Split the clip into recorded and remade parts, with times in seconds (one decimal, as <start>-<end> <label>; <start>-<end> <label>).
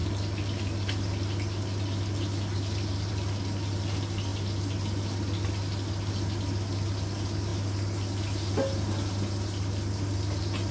0.0-10.7 recorded